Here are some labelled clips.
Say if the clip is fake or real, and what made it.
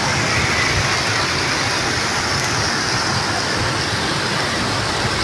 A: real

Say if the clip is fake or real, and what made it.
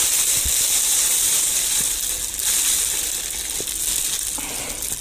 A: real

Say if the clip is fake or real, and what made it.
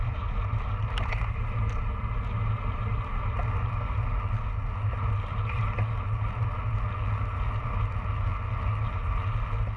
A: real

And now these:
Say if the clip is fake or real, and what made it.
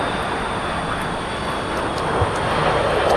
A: real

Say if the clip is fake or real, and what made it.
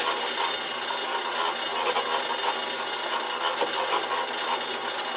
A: real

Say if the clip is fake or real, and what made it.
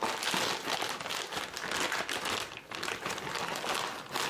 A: real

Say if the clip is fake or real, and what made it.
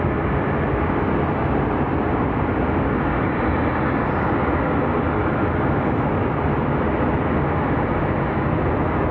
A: real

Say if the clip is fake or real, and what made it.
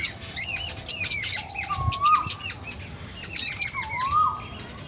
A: real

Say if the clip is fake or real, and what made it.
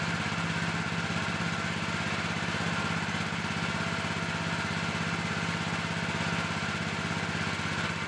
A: real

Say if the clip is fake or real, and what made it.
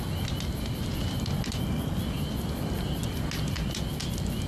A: real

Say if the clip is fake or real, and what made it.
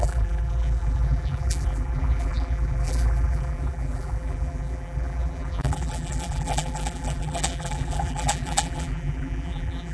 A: fake, vocoder, BigVGAN v2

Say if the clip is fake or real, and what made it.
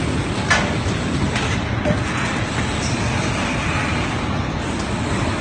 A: real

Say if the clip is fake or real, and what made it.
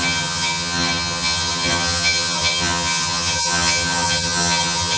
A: fake, vocoder, HiFi-GAN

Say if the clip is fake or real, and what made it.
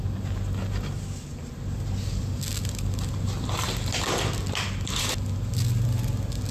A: real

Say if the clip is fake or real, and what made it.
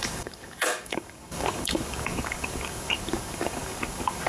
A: fake, codec, DAC